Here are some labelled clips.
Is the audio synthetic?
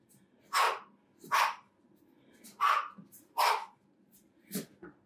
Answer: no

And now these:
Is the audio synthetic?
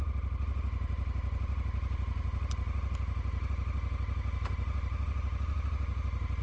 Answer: no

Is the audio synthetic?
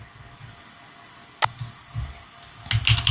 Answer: no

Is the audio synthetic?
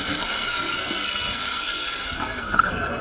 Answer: yes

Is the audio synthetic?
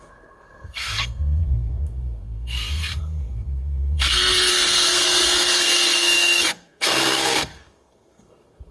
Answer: yes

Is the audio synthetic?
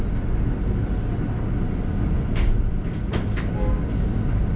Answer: no